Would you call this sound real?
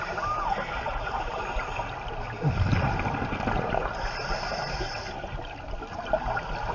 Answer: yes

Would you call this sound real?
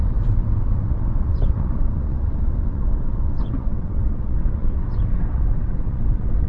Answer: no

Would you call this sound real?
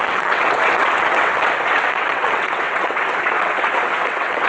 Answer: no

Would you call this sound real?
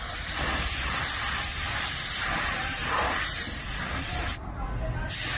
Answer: yes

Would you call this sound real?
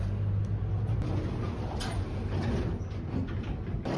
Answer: yes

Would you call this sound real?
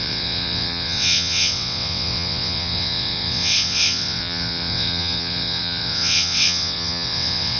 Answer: no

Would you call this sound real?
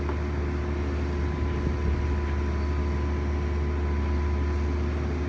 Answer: yes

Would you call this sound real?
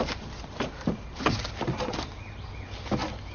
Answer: yes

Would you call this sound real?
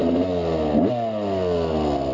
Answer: yes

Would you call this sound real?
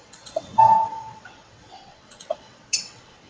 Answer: no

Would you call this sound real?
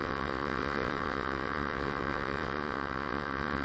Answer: no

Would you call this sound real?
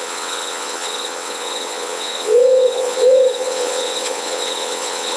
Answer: no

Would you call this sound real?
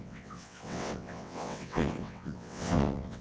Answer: no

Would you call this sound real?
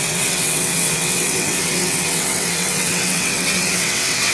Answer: no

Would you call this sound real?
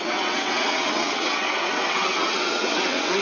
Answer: no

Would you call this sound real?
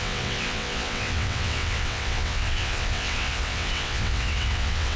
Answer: no